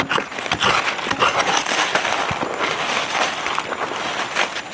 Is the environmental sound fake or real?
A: real